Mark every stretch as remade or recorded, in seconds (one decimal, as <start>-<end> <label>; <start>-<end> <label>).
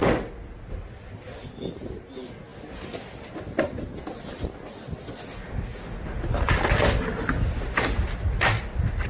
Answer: 0.0-9.1 recorded